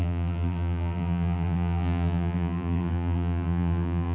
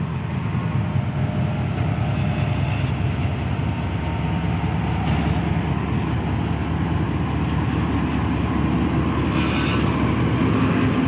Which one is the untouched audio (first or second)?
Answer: second